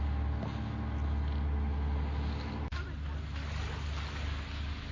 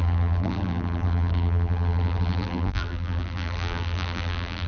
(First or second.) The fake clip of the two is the second